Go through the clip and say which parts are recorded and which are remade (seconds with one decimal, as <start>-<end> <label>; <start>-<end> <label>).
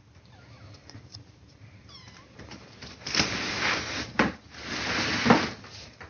0.0-0.8 recorded; 0.8-4.5 remade; 4.5-6.1 recorded